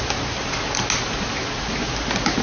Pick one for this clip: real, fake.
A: real